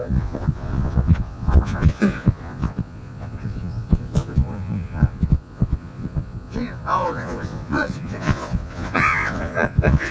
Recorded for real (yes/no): no